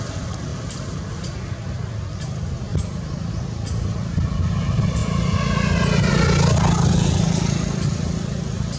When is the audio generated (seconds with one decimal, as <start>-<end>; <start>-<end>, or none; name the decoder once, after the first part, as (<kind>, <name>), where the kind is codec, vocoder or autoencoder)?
2.7-3.3 (vocoder, BigVGAN v2)